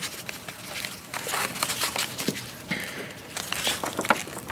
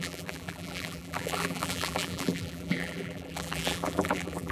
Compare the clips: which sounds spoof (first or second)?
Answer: second